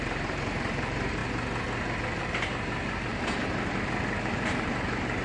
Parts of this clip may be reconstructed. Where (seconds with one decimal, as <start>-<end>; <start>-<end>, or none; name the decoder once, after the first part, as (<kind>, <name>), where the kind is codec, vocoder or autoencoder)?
0.0-1.2 (vocoder, BigVGAN v2); 2.0-5.2